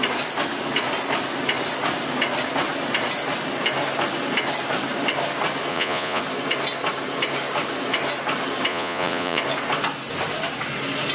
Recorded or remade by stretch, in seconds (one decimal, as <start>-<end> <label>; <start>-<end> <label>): 0.0-5.7 recorded; 5.7-6.2 remade; 6.2-8.7 recorded; 8.7-9.4 remade; 9.4-11.1 recorded